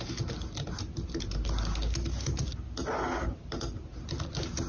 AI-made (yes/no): no